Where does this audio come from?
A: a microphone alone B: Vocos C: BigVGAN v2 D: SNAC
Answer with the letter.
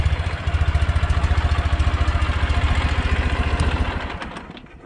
A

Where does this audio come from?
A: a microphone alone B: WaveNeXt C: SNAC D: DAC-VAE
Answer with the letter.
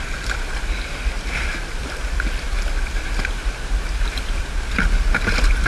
A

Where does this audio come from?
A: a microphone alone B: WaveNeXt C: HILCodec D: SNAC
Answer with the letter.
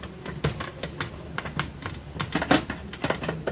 A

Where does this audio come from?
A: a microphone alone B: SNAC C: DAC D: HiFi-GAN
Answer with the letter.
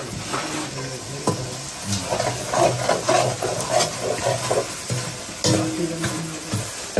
A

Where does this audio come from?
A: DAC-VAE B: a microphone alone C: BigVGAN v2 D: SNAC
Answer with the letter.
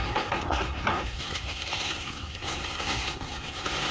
D